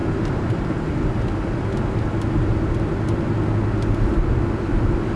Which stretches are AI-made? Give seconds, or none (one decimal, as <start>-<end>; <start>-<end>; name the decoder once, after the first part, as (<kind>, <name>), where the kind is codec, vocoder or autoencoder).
0.0-0.7 (vocoder, BigVGAN v2)